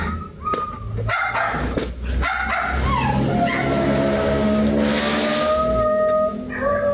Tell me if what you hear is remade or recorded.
recorded